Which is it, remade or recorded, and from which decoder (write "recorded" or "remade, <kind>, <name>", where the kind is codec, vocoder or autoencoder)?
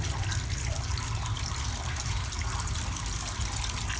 recorded